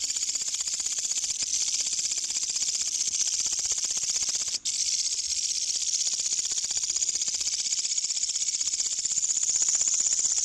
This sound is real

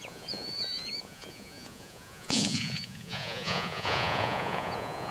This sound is fake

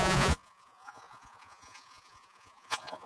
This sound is fake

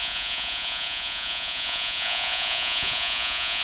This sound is fake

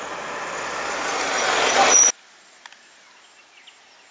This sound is real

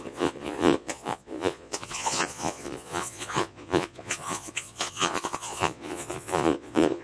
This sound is fake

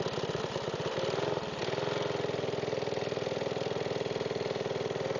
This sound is real